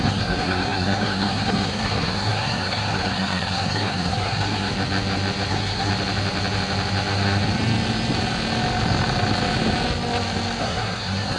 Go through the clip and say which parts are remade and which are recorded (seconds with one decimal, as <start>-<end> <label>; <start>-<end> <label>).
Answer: 0.0-4.7 remade; 4.7-5.5 recorded; 5.5-5.9 remade; 5.9-10.6 recorded; 10.6-11.4 remade